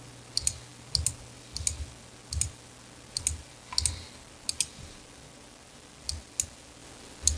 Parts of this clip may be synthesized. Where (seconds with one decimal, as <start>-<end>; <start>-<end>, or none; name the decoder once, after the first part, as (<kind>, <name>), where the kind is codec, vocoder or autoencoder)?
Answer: none